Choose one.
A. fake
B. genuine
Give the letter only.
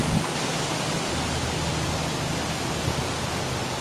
B